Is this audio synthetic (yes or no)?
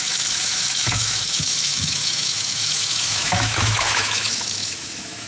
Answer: yes